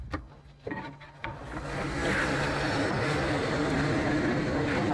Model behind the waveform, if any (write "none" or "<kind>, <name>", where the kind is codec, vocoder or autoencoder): none